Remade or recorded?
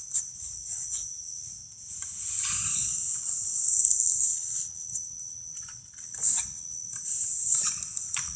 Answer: recorded